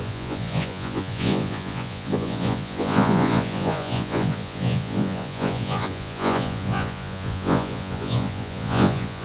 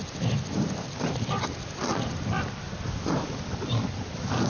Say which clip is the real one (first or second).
second